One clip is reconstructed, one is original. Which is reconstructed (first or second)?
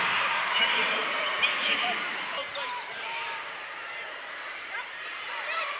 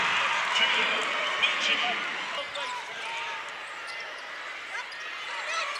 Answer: first